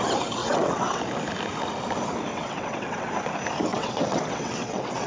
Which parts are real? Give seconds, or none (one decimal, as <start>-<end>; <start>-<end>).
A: 0.0-0.4; 1.0-2.3; 3.1-3.7